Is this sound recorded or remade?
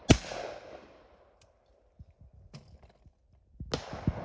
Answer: recorded